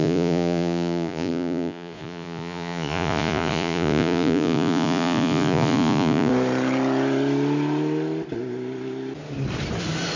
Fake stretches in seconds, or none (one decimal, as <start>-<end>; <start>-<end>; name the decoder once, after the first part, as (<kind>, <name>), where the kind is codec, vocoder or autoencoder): 0.0-6.3 (vocoder, Vocos)